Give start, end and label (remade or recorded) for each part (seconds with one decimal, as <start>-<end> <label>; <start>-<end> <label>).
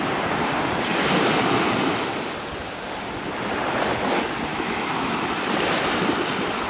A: 0.0-4.5 recorded; 4.5-5.1 remade; 5.1-6.7 recorded